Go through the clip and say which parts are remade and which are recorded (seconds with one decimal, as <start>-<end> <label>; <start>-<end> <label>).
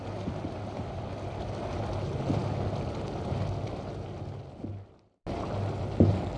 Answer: 0.0-6.4 recorded